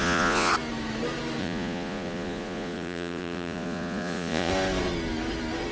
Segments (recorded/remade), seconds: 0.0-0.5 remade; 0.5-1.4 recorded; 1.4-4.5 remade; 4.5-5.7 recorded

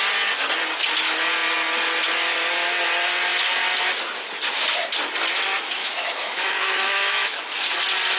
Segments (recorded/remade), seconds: 0.0-5.8 recorded; 5.8-7.4 remade; 7.4-8.2 recorded

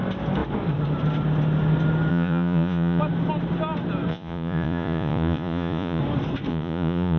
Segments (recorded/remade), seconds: 0.0-2.1 recorded; 2.1-3.0 remade; 3.0-4.1 recorded; 4.1-6.0 remade; 6.0-6.5 recorded; 6.5-7.2 remade

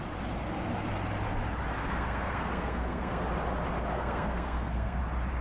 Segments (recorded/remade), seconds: 0.0-1.8 recorded; 1.8-3.2 remade; 3.2-3.9 recorded; 3.9-5.0 remade; 5.0-5.4 recorded

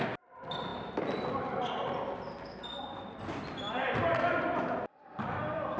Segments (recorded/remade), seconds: 0.0-5.8 recorded

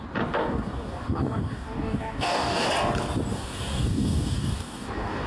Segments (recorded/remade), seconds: 0.0-0.4 recorded; 0.4-2.7 remade; 2.7-3.3 recorded; 3.3-5.3 remade

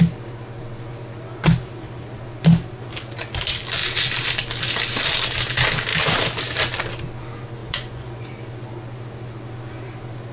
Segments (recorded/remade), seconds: 0.0-7.6 recorded; 7.6-8.3 remade; 8.3-10.3 recorded

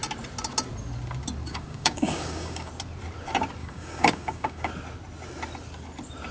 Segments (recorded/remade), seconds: 0.0-1.5 recorded; 1.5-2.7 remade; 2.7-3.6 recorded; 3.6-4.7 remade; 4.7-6.3 recorded